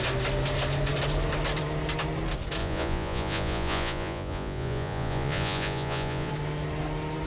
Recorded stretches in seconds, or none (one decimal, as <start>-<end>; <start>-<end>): 0.0-2.6; 6.3-7.3